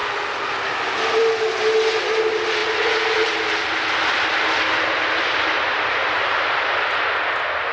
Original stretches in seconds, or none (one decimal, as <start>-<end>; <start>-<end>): 1.6-7.7